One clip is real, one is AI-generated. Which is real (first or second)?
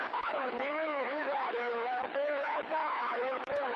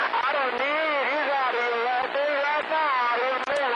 second